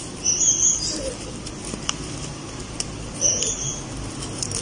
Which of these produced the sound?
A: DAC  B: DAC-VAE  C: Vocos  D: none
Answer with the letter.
D